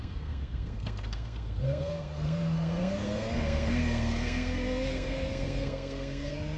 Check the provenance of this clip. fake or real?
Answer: fake